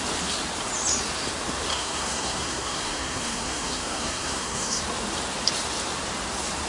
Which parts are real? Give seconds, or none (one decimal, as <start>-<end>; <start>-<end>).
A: 0.0-1.7; 4.8-6.7